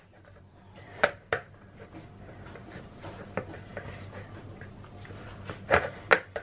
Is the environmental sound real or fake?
real